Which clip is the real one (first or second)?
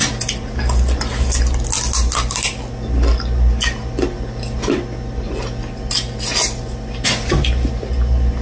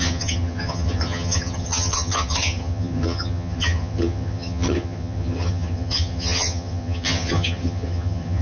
first